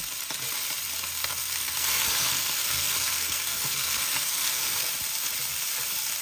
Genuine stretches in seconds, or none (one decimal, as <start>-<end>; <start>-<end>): 0.0-1.2; 4.9-6.2